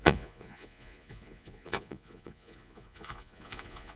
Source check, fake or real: fake